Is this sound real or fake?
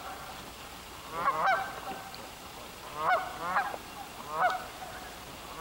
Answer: real